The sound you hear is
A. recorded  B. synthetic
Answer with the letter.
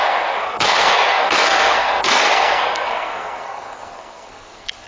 B